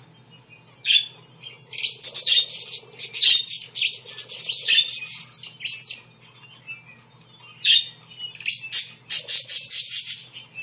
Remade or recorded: recorded